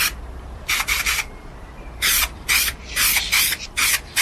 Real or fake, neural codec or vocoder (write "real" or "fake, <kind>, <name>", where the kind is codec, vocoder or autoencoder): fake, vocoder, BigVGAN v2